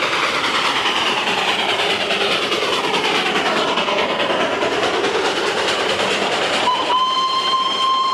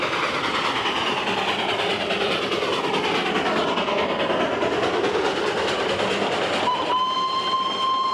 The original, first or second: second